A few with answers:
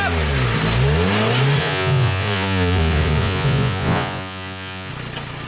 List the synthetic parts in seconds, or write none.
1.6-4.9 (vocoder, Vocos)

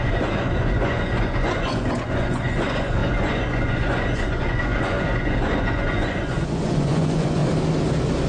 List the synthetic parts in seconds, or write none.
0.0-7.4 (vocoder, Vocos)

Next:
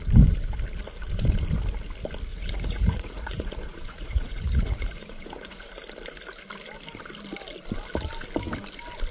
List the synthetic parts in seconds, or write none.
2.3-5.7 (vocoder, Vocos)

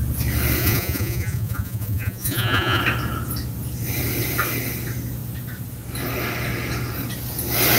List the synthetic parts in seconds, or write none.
0.6-2.8 (vocoder, Vocos)

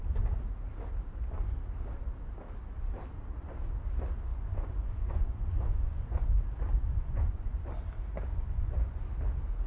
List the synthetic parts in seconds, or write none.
4.3-6.4 (vocoder, Vocos); 6.9-7.7; 8.3-9.0